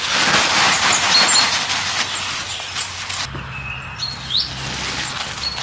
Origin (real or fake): real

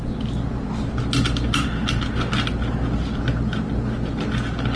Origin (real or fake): real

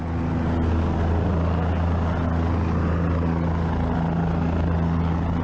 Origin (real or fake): real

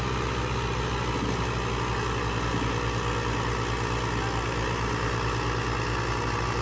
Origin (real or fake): real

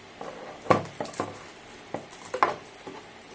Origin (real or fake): real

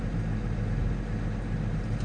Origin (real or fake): real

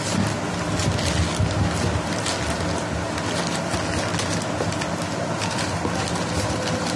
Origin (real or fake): real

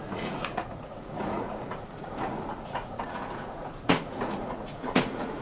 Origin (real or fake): fake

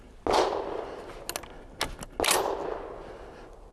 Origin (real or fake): real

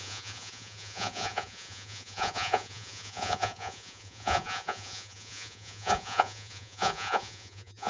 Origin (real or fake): fake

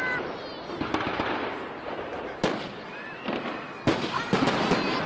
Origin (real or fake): real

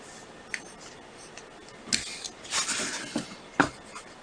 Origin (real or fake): real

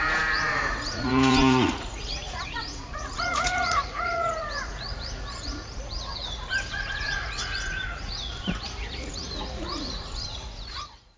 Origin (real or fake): fake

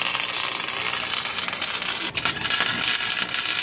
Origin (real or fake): real